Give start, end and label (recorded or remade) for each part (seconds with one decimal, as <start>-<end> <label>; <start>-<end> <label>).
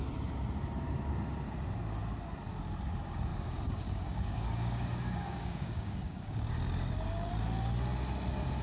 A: 0.0-3.3 recorded; 3.3-7.3 remade; 7.3-8.6 recorded